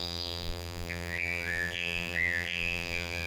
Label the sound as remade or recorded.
remade